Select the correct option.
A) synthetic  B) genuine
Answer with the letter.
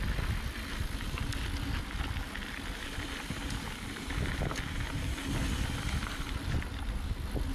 B